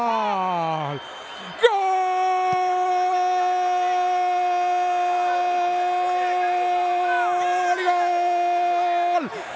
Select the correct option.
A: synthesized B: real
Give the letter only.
B